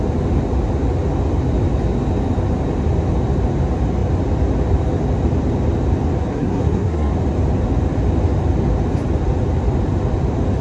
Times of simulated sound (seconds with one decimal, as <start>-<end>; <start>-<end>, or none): 6.3-7.1